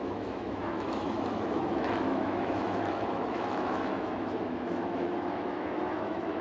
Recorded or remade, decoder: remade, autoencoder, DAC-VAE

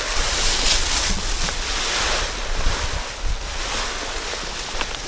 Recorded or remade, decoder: recorded